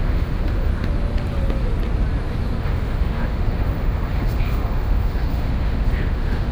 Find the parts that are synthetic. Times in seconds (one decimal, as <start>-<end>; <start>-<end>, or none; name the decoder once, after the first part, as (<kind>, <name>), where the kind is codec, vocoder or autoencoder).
0.0-0.7 (autoencoder, DAC-VAE); 2.6-6.5